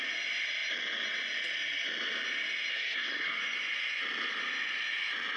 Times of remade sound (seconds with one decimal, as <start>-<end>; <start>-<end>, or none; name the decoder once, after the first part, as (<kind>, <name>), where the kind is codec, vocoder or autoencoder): 2.7-3.4 (codec, SNAC)